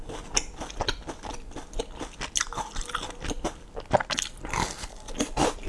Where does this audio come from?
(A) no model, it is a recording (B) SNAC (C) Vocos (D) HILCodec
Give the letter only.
A